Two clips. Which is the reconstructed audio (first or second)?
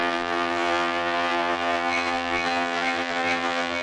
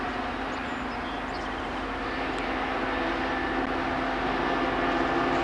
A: first